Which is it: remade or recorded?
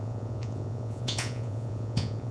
remade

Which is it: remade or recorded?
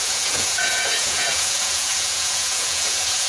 remade